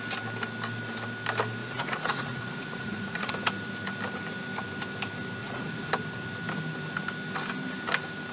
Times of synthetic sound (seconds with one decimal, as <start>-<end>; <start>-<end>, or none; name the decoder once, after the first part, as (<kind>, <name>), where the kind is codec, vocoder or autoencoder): 1.6-3.3 (vocoder, Vocos); 5.4-5.9